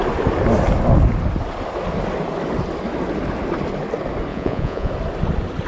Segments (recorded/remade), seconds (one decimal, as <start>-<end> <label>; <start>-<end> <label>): 0.0-4.3 recorded; 4.3-4.9 remade; 4.9-5.7 recorded